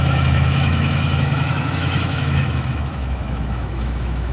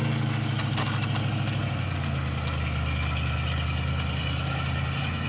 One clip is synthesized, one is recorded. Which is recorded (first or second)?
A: second